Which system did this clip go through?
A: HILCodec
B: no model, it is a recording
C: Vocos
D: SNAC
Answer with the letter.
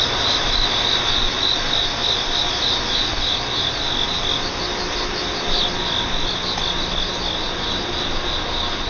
B